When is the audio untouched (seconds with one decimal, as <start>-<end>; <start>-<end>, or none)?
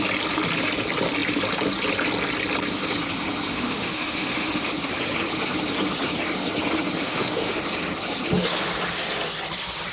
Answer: 0.0-3.5; 4.7-7.0; 7.6-9.9